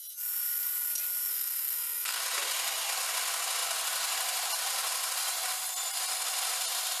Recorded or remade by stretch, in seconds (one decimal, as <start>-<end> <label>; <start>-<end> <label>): 0.0-1.3 recorded; 1.3-2.2 remade; 2.2-7.0 recorded